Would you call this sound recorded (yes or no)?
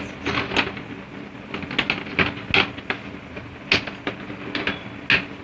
yes